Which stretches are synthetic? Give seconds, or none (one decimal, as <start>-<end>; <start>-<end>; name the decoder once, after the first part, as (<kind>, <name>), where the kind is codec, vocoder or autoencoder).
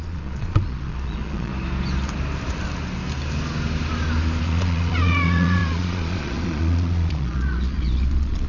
0.0-1.5 (vocoder, Vocos); 4.4-8.5